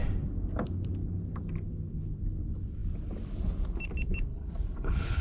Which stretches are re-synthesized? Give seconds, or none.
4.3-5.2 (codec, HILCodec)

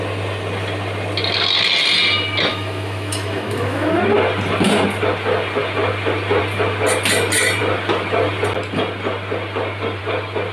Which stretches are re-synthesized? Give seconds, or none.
2.5-4.0 (autoencoder, DAC-VAE)

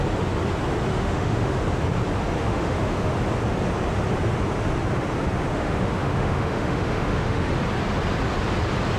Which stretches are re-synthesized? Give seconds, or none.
0.9-1.6 (autoencoder, DAC-VAE); 2.4-3.2; 5.5-7.5

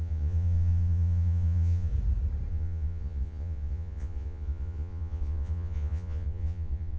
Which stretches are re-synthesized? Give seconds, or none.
0.0-1.9 (vocoder, Vocos); 2.5-7.0

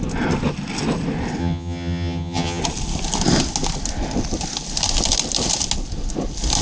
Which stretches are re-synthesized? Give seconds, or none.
1.4-2.6 (vocoder, HiFi-GAN)

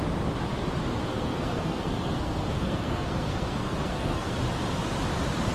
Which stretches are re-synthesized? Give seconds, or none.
1.1-4.4 (codec, SNAC)

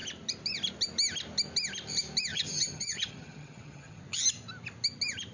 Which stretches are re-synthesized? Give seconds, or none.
2.3-4.0 (vocoder, HiFi-GAN)

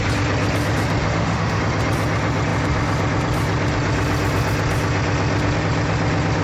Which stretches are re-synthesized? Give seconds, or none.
1.0-1.6 (autoencoder, DAC-VAE)